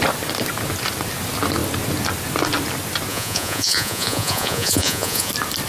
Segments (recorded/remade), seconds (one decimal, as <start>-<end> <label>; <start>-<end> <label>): 0.0-3.1 recorded; 3.1-5.3 remade; 5.3-5.7 recorded